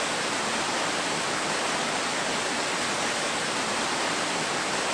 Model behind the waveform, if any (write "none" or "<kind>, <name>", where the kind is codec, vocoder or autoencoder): none